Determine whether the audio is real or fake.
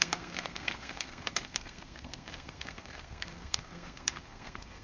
fake